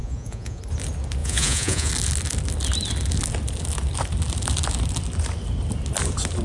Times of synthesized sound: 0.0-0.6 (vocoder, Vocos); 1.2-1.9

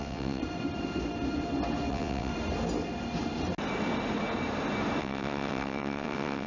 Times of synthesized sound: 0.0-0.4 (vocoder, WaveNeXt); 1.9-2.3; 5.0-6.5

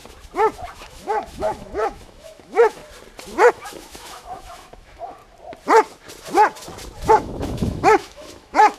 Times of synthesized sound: 0.7-2.8 (autoencoder, DAC-VAE); 3.5-5.2; 7.1-8.8